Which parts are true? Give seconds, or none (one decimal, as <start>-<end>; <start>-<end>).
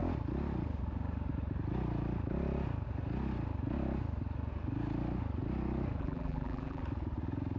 0.0-6.0; 6.8-7.6